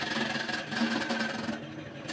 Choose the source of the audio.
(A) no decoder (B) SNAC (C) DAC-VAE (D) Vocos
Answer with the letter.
A